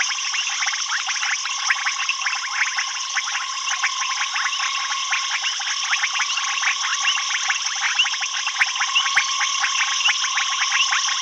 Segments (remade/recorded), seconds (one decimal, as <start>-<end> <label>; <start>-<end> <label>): 0.0-11.2 recorded